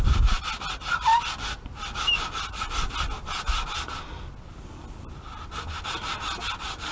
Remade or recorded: recorded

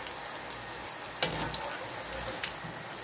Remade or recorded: recorded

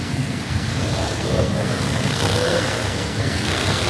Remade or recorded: remade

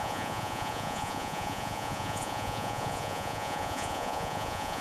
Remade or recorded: remade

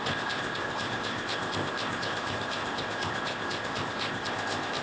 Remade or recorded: remade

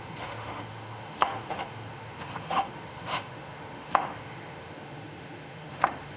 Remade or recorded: remade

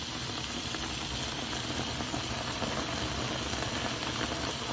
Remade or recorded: recorded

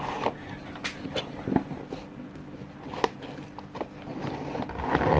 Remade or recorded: recorded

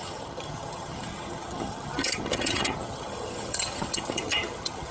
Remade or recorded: remade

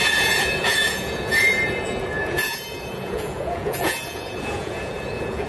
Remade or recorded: remade